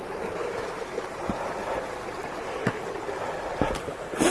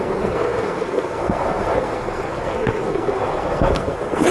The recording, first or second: first